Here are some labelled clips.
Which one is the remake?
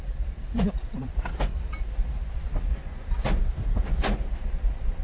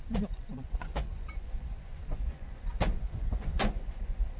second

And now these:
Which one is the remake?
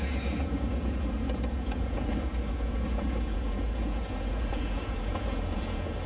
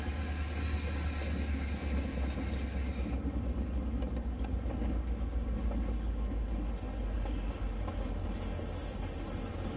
first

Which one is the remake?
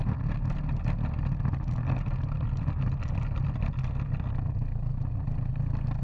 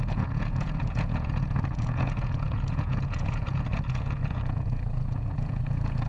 second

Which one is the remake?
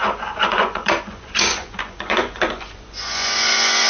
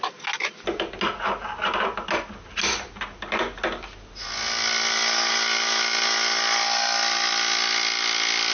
first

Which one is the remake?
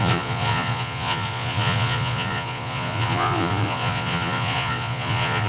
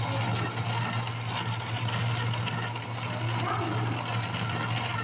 first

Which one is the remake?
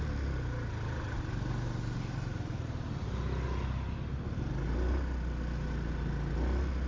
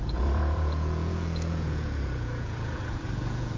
second